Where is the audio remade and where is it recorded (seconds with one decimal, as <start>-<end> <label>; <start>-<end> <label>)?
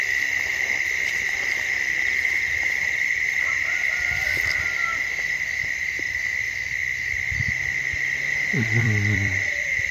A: 0.0-4.9 remade; 4.9-5.6 recorded; 5.6-9.9 remade